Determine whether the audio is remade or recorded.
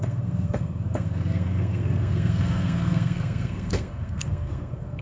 remade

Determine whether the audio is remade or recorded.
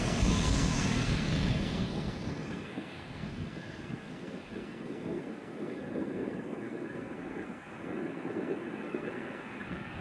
remade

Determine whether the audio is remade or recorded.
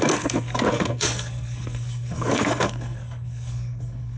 remade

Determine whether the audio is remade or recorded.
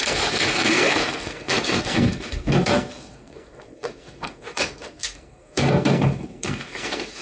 remade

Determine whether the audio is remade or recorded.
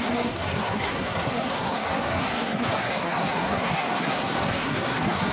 remade